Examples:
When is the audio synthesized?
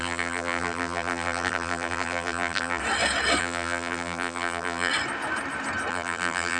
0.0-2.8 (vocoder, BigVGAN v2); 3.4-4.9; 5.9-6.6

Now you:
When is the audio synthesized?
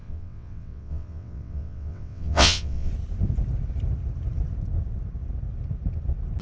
0.0-2.9 (vocoder, WaveNeXt)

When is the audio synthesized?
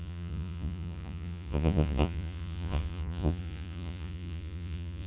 0.0-5.1 (vocoder, Vocos)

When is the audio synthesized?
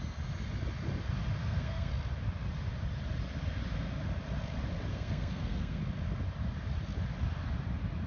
1.4-1.9 (codec, SNAC); 4.9-5.8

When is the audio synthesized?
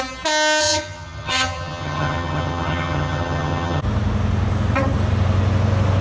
0.6-3.8 (vocoder, HiFi-GAN)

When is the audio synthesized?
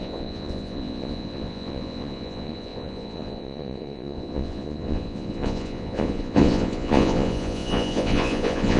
0.0-8.8 (vocoder, Vocos)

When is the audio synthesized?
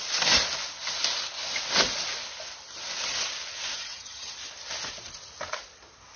3.8-4.3 (vocoder, HiFi-GAN)